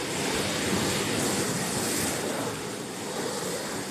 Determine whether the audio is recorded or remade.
recorded